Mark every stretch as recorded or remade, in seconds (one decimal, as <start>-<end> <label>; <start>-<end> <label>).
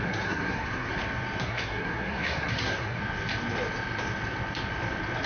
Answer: 0.0-0.9 remade; 0.9-1.4 recorded; 1.4-3.0 remade; 3.0-5.3 recorded